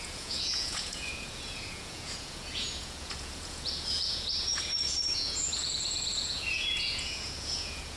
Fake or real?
fake